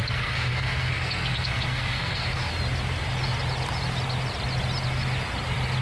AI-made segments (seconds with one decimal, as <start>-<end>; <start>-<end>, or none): 0.0-2.5